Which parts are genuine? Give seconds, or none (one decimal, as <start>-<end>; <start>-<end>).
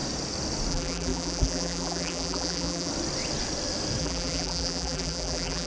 0.0-0.7; 2.9-4.0